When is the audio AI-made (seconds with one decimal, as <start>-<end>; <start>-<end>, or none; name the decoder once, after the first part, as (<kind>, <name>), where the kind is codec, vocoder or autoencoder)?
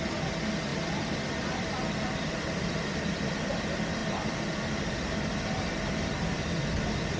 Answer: 0.7-3.5 (vocoder, BigVGAN v2); 4.0-4.9